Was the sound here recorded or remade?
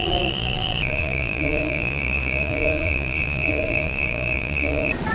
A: remade